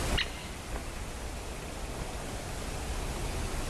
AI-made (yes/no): no